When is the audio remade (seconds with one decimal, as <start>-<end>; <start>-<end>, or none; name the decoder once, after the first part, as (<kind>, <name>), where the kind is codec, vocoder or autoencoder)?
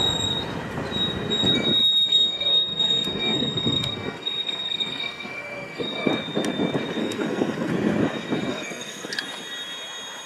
2.1-6.1 (codec, SNAC); 7.0-7.7; 8.5-9.1